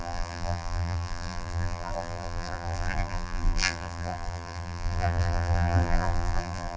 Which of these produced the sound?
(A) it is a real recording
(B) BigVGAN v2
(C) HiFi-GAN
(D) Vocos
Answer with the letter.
B